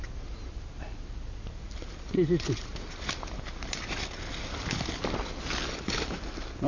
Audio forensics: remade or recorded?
recorded